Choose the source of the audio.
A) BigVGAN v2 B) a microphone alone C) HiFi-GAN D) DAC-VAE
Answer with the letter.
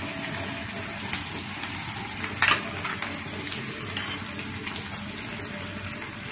B